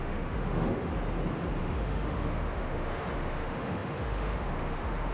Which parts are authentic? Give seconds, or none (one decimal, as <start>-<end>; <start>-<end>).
0.9-1.6